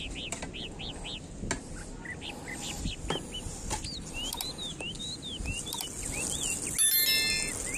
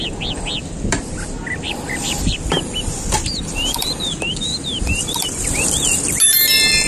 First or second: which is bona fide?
first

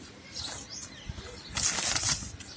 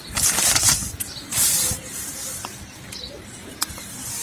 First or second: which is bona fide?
first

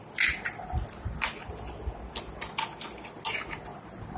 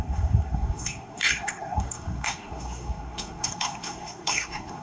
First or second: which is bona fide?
first